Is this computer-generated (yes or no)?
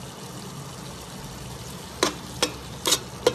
no